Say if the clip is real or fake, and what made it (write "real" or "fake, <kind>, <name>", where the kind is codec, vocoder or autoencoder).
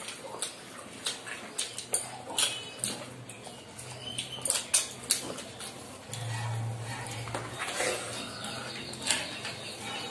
real